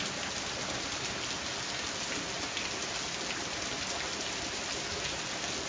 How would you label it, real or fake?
real